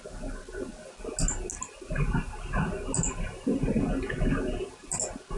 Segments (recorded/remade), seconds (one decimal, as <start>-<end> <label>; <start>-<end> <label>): 0.0-5.4 recorded